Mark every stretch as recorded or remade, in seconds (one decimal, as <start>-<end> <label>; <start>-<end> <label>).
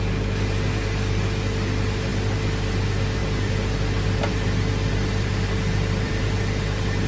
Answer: 0.0-3.2 recorded; 3.2-6.2 remade; 6.2-7.1 recorded